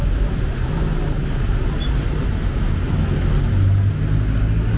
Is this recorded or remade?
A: recorded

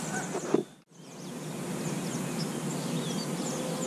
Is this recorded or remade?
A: recorded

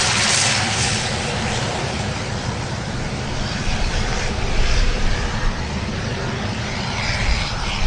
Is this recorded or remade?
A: remade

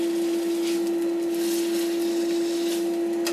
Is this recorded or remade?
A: recorded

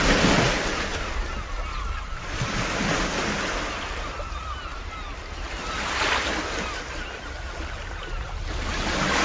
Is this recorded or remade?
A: recorded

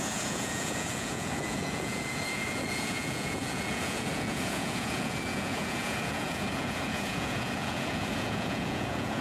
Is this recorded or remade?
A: remade